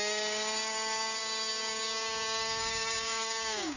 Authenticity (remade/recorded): remade